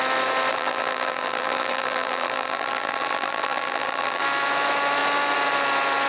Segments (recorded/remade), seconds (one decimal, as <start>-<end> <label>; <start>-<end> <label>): 0.0-0.5 recorded; 0.5-4.2 remade; 4.2-6.1 recorded